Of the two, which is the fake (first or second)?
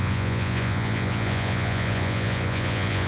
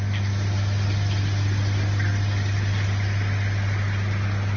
first